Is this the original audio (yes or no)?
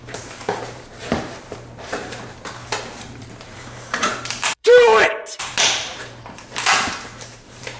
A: no